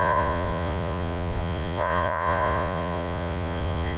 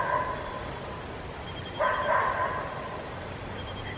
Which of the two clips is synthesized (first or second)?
first